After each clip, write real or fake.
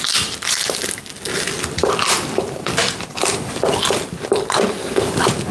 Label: real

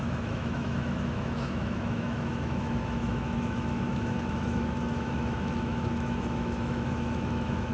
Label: fake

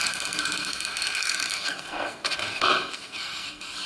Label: fake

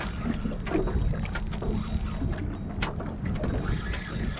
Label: real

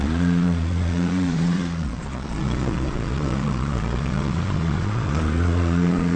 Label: fake